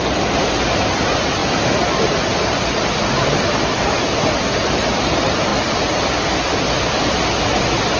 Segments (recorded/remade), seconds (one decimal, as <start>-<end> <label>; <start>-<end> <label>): 0.0-0.5 remade; 0.5-1.4 recorded; 1.4-3.1 remade; 3.1-5.5 recorded; 5.5-7.1 remade; 7.1-8.0 recorded